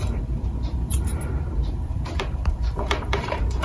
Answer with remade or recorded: remade